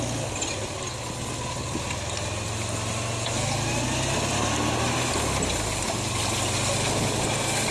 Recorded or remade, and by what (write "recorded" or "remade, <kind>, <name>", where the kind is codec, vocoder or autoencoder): recorded